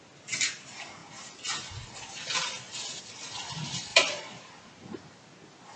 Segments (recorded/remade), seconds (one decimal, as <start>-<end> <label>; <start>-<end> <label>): 0.0-3.9 recorded; 3.9-4.4 remade; 4.4-5.8 recorded